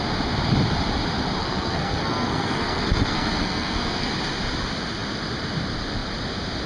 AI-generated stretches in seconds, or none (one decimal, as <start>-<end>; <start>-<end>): 1.4-4.1